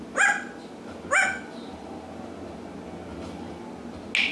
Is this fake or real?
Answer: real